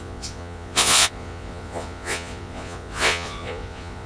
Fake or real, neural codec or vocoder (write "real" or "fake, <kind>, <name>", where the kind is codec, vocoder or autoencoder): fake, vocoder, Vocos